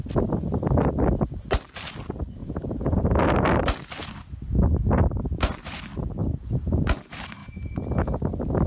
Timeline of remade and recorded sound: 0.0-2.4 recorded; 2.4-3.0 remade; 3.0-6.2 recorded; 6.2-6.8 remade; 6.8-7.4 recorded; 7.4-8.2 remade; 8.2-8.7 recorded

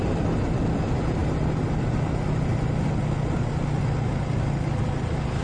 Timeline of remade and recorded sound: 0.0-5.4 recorded

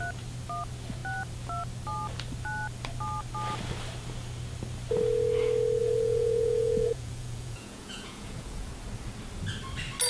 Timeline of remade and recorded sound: 0.0-5.8 recorded; 5.8-8.7 remade; 8.7-10.1 recorded

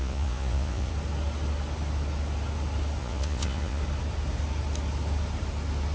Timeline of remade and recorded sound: 0.0-0.9 remade; 0.9-3.0 recorded; 3.0-3.8 remade; 3.8-5.9 recorded

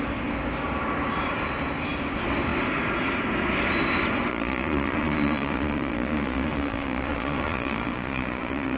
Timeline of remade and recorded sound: 0.0-4.3 recorded; 4.3-8.8 remade

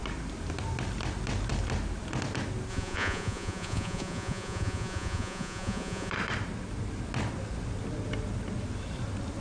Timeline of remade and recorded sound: 0.0-2.7 recorded; 2.7-6.1 remade; 6.1-9.4 recorded

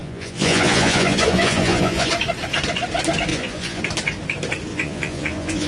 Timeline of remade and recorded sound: 0.0-2.1 remade; 2.1-3.3 recorded; 3.3-3.8 remade; 3.8-4.7 recorded; 4.7-5.7 remade